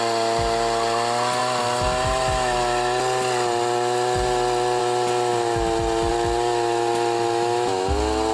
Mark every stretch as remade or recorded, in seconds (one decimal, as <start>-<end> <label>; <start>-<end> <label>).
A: 0.0-8.3 recorded